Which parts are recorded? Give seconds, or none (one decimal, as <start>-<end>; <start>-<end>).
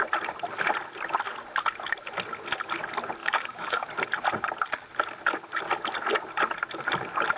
0.0-3.2; 3.9-7.4